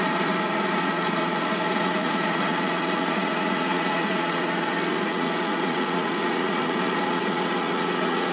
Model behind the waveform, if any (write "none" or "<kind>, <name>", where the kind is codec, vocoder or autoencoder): vocoder, Vocos